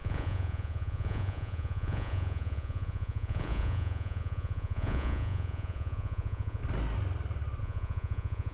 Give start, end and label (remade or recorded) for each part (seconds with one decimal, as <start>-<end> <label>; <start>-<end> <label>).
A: 0.0-6.6 remade; 6.6-7.6 recorded; 7.6-8.5 remade